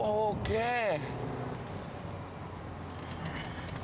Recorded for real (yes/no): yes